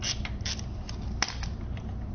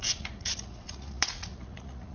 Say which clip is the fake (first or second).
second